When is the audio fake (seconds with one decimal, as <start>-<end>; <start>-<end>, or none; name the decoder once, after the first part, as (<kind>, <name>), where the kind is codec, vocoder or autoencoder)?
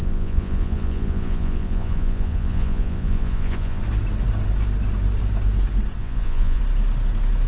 0.0-3.8 (vocoder, Vocos); 6.0-6.6